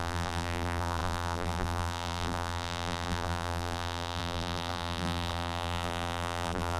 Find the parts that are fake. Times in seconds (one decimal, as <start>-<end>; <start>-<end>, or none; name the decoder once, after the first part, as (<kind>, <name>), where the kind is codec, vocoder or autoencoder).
0.0-6.8 (vocoder, BigVGAN v2)